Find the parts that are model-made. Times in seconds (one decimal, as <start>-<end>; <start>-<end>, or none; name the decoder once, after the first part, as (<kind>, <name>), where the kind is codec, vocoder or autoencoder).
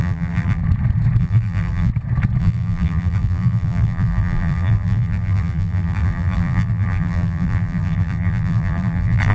0.0-0.6 (vocoder, BigVGAN v2); 1.2-1.9; 2.4-9.3